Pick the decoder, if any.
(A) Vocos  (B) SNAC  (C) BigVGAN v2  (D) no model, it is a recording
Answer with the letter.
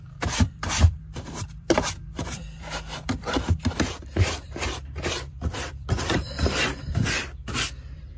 C